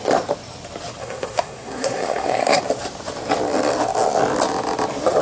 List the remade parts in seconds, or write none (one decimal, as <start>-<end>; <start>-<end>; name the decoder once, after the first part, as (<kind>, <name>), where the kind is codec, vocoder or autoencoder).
1.0-2.6 (codec, SNAC)